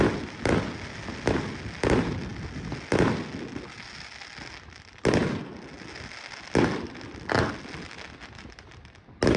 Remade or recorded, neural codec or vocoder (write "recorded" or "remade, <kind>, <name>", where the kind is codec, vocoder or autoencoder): recorded